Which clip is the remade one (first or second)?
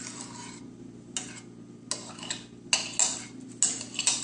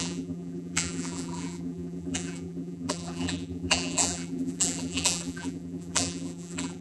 second